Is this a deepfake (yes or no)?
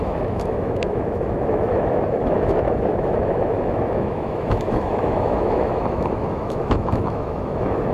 yes